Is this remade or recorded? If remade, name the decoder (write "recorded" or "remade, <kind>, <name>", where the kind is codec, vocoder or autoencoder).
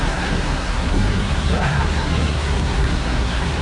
remade, codec, SNAC